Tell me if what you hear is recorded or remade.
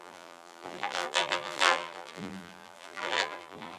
remade